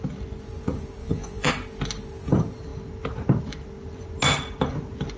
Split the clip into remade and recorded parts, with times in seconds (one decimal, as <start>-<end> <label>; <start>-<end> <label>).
0.0-1.0 recorded; 1.0-1.5 remade; 1.5-5.2 recorded